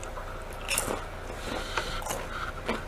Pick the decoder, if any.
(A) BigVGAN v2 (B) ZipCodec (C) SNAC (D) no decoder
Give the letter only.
D